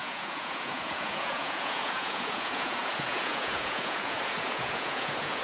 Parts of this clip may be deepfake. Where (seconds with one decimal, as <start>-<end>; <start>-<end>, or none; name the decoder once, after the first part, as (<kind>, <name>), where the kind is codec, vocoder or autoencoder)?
0.0-5.4 (vocoder, Vocos)